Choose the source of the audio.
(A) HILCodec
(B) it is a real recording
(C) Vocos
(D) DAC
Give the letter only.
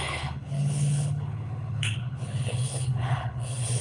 A